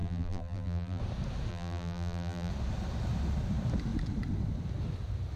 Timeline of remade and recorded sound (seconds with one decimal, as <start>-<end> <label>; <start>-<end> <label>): 0.0-1.0 remade; 1.0-1.5 recorded; 1.5-2.5 remade; 2.5-5.4 recorded